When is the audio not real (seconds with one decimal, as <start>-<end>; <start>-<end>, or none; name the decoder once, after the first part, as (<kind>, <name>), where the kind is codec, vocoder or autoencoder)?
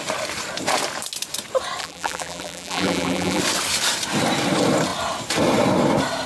1.8-3.4 (vocoder, BigVGAN v2)